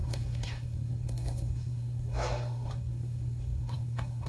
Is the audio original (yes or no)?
no